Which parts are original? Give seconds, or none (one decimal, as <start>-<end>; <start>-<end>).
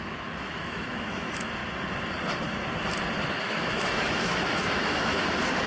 1.6-3.4